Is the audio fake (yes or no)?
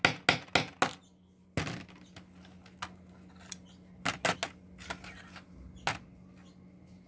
no